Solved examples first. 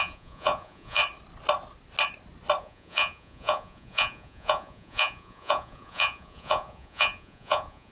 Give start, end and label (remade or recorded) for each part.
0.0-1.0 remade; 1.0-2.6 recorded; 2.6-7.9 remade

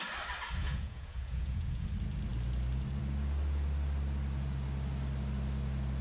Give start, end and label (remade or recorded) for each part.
0.0-0.6 recorded; 0.6-1.9 remade; 1.9-6.0 recorded

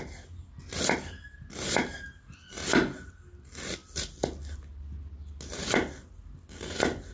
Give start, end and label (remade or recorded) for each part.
0.0-7.1 recorded